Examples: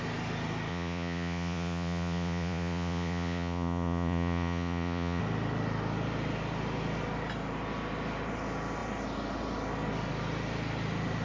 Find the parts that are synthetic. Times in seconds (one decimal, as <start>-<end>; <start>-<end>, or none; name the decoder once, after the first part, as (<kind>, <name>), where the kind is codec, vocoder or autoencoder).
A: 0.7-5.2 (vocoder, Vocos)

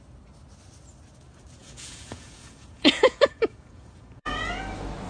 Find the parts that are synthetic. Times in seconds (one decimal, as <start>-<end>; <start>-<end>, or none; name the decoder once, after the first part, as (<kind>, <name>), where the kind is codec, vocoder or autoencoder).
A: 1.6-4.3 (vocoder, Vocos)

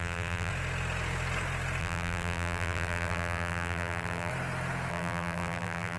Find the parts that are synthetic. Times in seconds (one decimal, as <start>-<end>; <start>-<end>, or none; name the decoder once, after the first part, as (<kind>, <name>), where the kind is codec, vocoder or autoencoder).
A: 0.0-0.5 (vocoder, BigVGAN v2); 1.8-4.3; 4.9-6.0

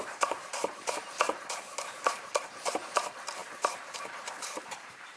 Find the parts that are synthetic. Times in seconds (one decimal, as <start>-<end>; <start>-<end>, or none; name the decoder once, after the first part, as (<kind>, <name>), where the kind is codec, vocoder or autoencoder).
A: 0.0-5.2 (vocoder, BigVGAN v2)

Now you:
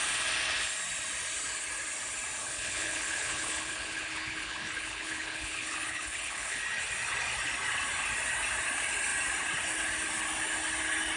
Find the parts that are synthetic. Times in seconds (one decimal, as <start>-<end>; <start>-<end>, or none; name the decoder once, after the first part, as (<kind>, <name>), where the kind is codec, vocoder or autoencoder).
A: 2.4-6.6 (codec, HILCodec)

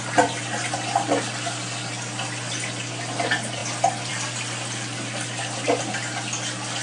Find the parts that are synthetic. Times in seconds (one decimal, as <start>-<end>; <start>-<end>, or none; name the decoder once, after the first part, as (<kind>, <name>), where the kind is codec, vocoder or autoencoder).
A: none